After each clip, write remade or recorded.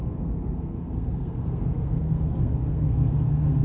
remade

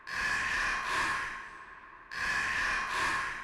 recorded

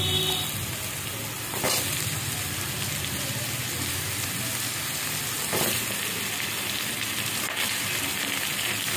recorded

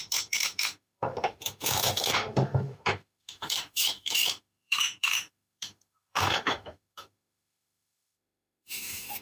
remade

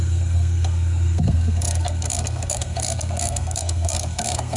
remade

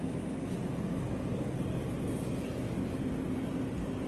recorded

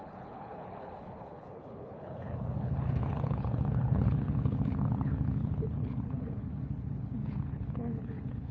remade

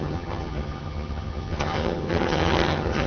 remade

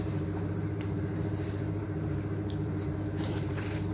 remade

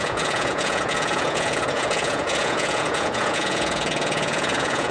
remade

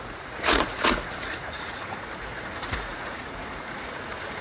remade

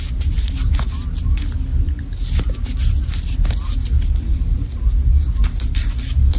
recorded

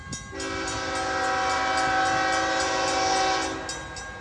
recorded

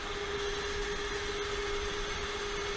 recorded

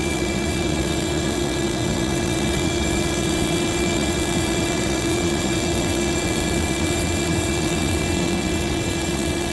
remade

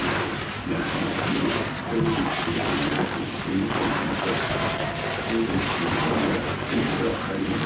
recorded